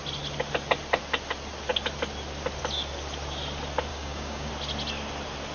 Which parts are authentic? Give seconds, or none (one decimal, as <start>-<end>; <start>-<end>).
0.0-3.9; 4.5-5.5